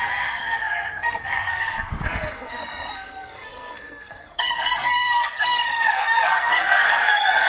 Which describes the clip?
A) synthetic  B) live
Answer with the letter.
A